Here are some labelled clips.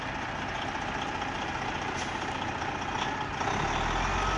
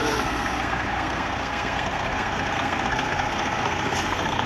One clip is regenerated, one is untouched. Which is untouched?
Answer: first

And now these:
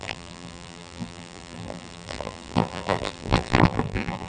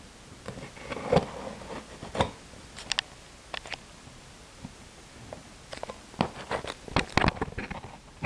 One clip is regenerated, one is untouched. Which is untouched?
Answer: second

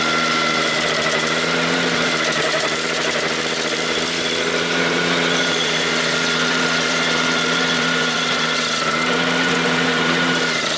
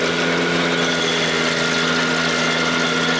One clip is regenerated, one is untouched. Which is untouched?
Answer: second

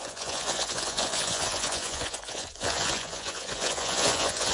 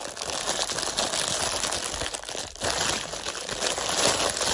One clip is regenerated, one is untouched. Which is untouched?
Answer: second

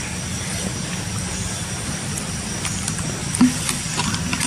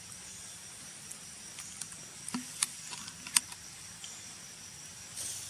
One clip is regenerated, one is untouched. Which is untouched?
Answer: second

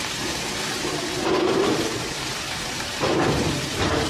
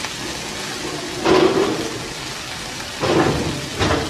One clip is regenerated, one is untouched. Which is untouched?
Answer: second